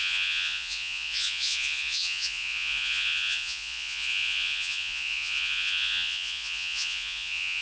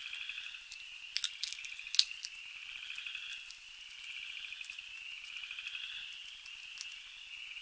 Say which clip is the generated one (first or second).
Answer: first